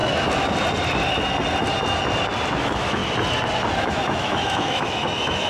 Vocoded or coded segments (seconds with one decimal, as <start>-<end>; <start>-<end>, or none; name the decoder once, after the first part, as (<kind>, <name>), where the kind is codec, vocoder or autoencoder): 2.6-3.0 (autoencoder, DAC-VAE); 3.8-5.5